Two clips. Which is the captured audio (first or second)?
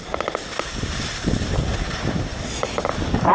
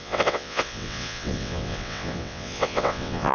first